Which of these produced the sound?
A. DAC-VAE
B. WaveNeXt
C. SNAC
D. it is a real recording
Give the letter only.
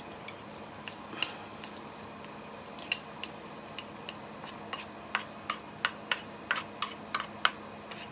D